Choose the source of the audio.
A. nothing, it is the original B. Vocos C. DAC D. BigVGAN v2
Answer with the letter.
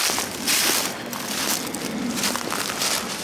A